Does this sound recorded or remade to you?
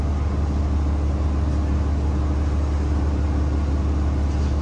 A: recorded